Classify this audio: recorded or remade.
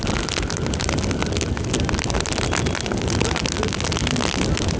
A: recorded